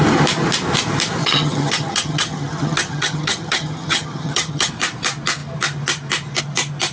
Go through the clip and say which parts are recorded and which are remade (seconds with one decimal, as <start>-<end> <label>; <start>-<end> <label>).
0.0-1.2 recorded; 1.2-4.7 remade; 4.7-6.9 recorded

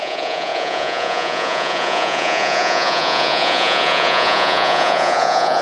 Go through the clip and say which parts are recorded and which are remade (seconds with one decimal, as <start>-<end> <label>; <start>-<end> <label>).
0.0-5.6 remade

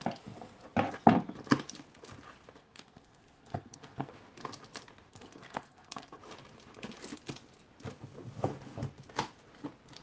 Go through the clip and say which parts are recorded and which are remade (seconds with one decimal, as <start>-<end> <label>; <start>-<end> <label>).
0.0-2.6 recorded; 2.6-4.1 remade; 4.1-5.1 recorded; 5.1-6.2 remade; 6.2-10.0 recorded